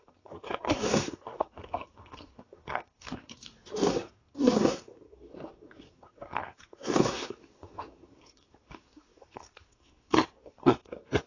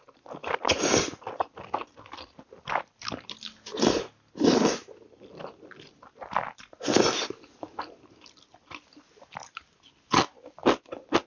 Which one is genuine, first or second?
second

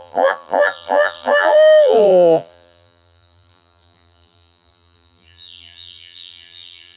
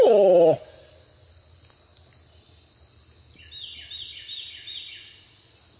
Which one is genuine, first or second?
second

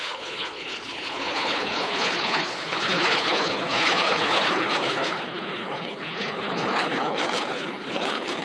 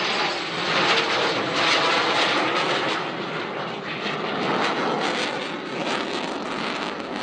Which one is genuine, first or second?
second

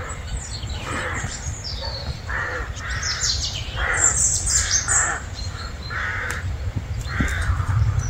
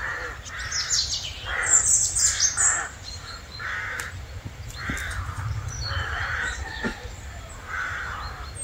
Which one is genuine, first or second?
second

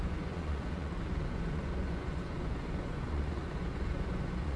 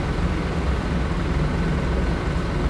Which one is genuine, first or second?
second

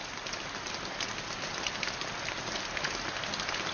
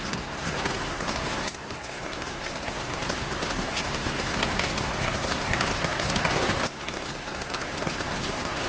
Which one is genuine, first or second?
first